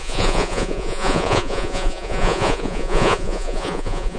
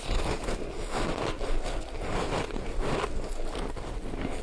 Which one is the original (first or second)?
second